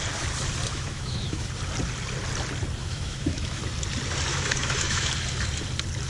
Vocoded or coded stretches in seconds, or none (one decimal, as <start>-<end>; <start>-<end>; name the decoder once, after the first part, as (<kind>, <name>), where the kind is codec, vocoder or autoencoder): 0.7-1.5 (autoencoder, DAC-VAE); 2.8-3.6; 4.3-5.1